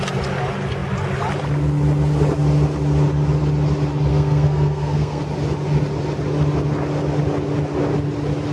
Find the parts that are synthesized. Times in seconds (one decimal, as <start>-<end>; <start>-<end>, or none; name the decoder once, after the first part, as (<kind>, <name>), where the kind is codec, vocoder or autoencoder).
4.1-5.2 (codec, SNAC)